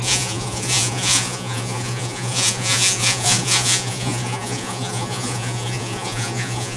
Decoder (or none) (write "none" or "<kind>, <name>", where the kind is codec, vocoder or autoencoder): vocoder, Vocos